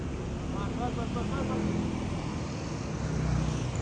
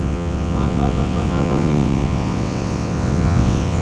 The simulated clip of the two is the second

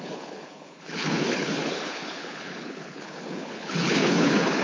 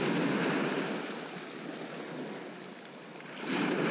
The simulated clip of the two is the first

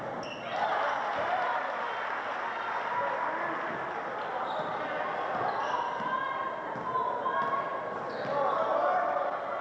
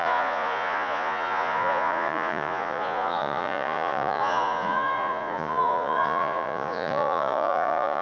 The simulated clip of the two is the second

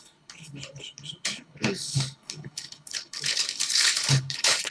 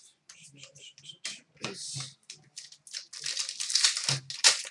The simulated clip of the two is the first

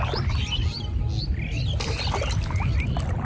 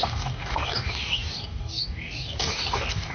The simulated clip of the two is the second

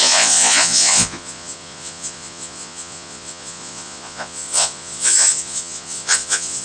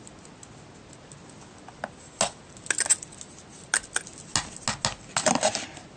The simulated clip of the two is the first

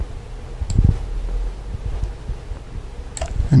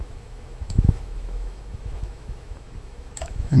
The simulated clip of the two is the second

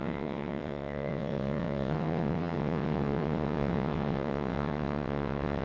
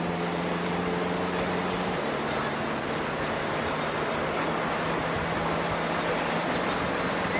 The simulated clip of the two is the first